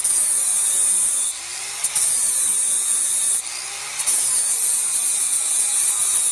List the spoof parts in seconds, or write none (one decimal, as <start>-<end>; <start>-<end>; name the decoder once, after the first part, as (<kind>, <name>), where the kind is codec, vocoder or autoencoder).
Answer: 1.5-3.0 (vocoder, BigVGAN v2)